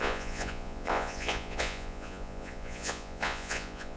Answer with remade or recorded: remade